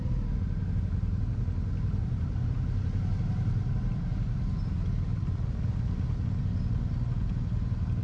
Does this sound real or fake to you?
real